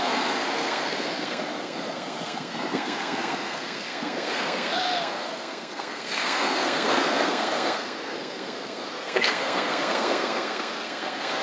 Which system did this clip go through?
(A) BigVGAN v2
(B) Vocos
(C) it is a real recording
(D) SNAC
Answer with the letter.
D